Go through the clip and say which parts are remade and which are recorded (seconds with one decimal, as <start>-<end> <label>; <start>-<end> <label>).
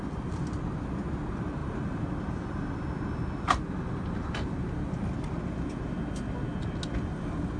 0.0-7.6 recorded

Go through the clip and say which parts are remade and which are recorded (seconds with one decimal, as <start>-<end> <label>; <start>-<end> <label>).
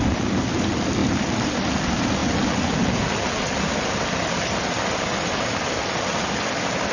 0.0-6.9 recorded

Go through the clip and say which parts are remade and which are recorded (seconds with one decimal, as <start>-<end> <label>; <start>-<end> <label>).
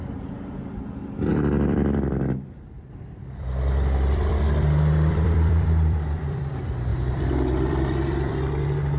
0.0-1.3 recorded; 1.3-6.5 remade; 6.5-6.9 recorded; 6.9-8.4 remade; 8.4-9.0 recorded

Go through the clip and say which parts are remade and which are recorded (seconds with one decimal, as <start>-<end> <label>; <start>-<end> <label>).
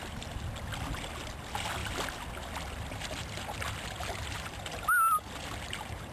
0.0-6.1 recorded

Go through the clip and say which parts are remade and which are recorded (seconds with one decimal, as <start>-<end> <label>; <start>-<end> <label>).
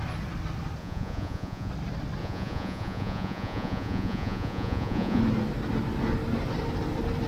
0.0-0.8 recorded; 0.8-1.7 remade; 1.7-2.2 recorded; 2.2-5.2 remade; 5.2-7.3 recorded